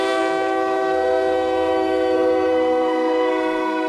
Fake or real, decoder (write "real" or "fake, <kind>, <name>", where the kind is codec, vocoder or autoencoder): fake, codec, SNAC